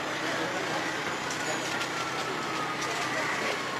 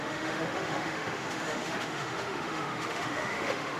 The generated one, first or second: second